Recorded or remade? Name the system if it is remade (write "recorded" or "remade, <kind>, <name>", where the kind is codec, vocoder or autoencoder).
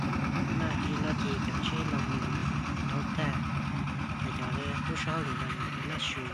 recorded